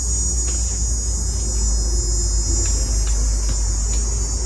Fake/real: real